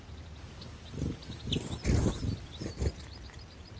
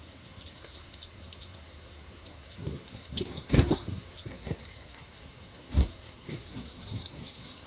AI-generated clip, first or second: second